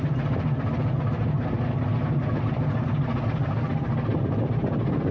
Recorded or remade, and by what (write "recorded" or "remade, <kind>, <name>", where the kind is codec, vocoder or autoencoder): recorded